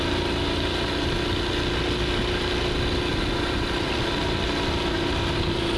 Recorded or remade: recorded